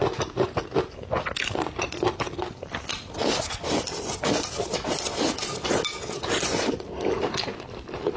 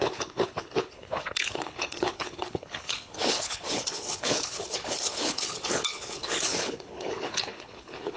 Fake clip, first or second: second